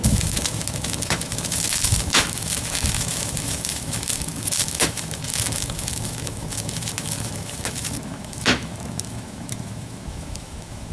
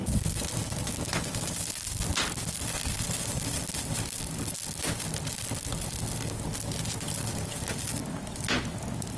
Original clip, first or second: second